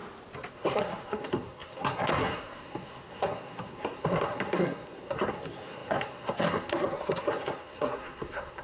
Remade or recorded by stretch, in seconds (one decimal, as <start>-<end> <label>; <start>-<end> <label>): 0.0-0.5 recorded; 0.5-8.6 remade